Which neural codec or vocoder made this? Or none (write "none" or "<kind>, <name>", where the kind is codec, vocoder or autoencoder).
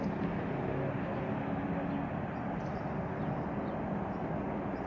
none